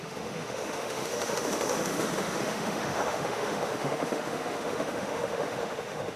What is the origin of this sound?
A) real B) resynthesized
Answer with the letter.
B